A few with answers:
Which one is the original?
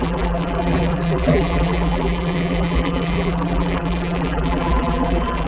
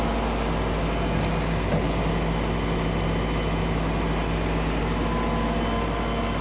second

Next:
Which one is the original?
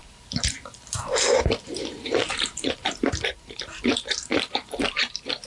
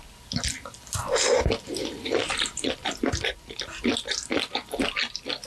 second